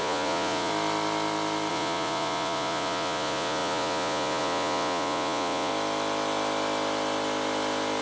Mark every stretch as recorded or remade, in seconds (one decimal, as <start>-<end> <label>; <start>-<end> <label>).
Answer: 0.0-0.7 remade; 0.7-1.7 recorded; 1.7-5.7 remade; 5.7-8.0 recorded